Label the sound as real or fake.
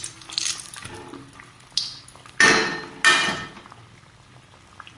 real